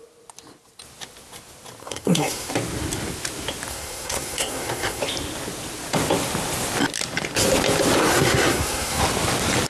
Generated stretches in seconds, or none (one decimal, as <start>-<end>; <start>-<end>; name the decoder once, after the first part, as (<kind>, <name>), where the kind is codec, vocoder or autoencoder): 1.8-2.5 (codec, SNAC); 3.7-5.0; 8.1-9.0